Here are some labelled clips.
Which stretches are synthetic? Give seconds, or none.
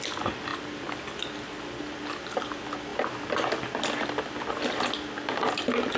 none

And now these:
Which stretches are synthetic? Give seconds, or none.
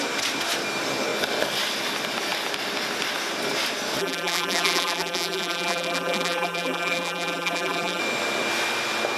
4.0-8.0 (vocoder, BigVGAN v2)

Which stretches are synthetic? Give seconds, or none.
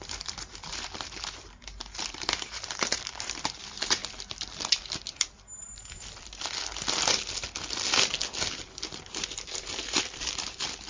0.0-4.0 (vocoder, BigVGAN v2); 9.0-10.9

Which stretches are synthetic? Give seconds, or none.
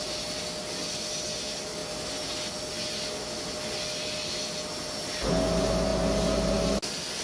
none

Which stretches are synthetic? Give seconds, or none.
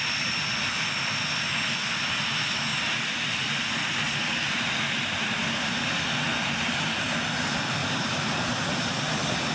7.8-8.3 (vocoder, BigVGAN v2)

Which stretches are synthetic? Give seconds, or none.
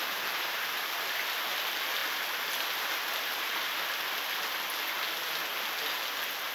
0.0-0.8 (vocoder, BigVGAN v2)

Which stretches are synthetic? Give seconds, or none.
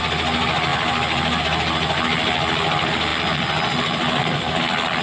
none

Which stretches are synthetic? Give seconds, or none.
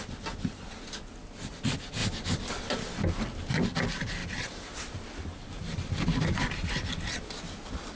4.2-6.9 (vocoder, BigVGAN v2)